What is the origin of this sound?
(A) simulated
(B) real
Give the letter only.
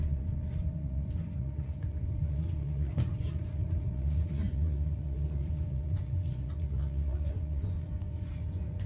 A